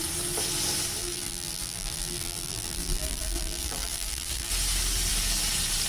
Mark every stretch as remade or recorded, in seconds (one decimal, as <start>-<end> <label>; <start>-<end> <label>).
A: 0.0-1.0 recorded; 1.0-4.5 remade; 4.5-5.9 recorded